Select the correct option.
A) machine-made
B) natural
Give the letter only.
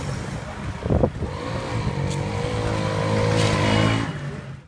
B